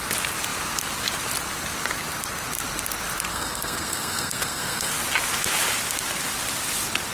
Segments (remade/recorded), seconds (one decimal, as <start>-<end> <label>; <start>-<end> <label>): 0.0-3.3 recorded; 3.3-4.9 remade; 4.9-7.1 recorded

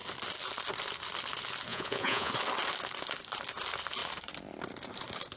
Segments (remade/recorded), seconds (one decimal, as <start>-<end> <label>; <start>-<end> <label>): 0.0-1.7 recorded; 1.7-2.3 remade; 2.3-5.4 recorded

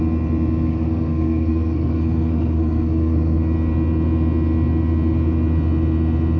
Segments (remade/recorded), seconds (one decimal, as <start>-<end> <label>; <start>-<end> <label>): 0.0-0.7 recorded; 0.7-3.4 remade; 3.4-6.4 recorded

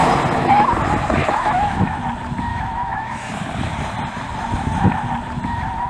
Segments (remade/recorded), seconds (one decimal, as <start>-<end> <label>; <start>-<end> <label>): 0.0-1.2 recorded; 1.2-2.0 remade; 2.0-2.5 recorded; 2.5-3.3 remade; 3.3-5.9 recorded

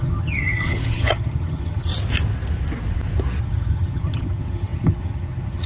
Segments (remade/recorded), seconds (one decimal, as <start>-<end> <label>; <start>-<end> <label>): 0.0-1.9 remade; 1.9-3.4 recorded; 3.4-5.7 remade

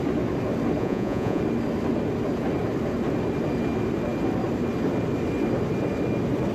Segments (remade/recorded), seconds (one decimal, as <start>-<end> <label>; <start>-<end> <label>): 0.0-0.8 recorded; 0.8-1.4 remade; 1.4-6.5 recorded

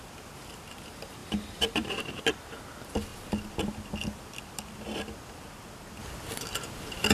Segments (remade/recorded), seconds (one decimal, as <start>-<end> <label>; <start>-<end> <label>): 0.0-1.2 recorded; 1.2-2.2 remade; 2.2-7.1 recorded

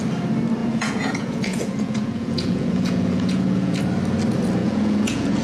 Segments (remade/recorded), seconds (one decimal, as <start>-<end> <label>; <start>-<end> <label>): 0.0-0.6 recorded; 0.6-3.8 remade; 3.8-4.6 recorded; 4.6-5.4 remade